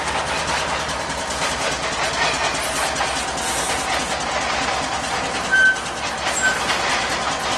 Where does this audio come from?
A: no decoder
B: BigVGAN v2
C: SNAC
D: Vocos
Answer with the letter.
A